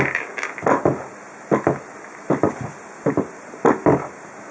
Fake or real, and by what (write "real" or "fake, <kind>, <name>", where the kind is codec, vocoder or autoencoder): real